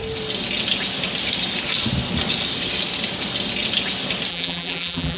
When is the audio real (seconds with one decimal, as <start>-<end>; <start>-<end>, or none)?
0.0-4.3